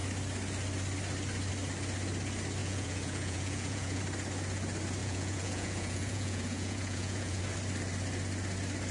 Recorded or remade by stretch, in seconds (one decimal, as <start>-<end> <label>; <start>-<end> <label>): 0.0-2.6 recorded; 2.6-4.0 remade; 4.0-5.0 recorded; 5.0-7.4 remade; 7.4-8.9 recorded